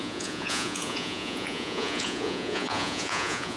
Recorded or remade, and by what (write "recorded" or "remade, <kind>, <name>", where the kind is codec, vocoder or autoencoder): remade, vocoder, Vocos